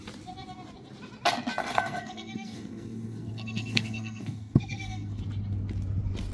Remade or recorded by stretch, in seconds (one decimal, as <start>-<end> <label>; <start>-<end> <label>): 0.0-1.6 recorded; 1.6-5.2 remade; 5.2-6.3 recorded